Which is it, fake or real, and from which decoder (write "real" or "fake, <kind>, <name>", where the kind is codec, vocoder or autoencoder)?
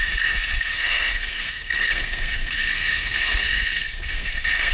fake, codec, SNAC